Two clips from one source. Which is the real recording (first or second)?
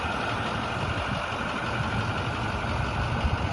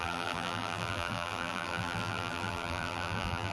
first